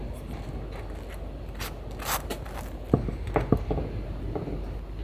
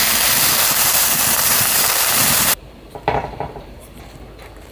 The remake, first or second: second